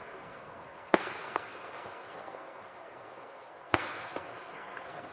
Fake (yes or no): yes